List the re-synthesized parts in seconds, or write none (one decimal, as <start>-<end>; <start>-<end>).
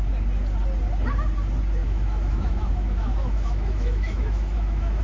1.8-5.0